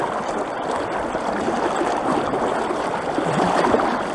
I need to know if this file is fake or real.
real